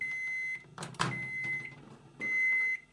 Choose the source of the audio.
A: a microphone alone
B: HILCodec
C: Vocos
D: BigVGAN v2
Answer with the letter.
A